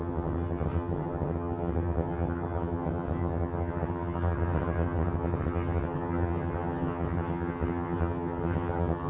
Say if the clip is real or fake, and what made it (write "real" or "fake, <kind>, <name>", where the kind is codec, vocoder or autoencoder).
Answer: fake, vocoder, HiFi-GAN